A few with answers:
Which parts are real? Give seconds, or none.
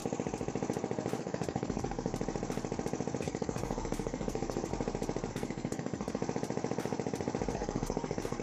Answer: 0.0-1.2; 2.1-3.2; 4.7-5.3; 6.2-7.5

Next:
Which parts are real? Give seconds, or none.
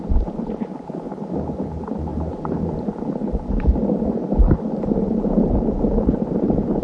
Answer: none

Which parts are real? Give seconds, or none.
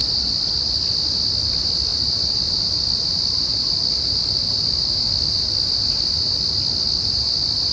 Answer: 0.0-7.7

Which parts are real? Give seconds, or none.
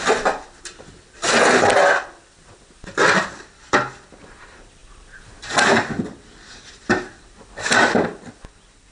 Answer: 0.0-8.9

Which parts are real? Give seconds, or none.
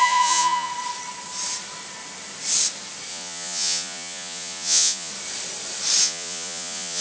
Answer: 0.7-3.1; 5.1-6.0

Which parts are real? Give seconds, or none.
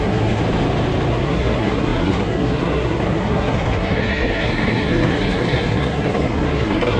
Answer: 0.4-1.1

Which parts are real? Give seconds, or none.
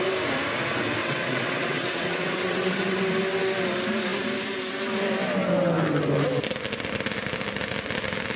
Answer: 0.0-1.0; 3.0-8.4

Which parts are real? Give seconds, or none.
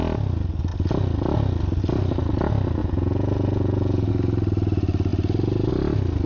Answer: 0.0-2.8; 4.1-6.3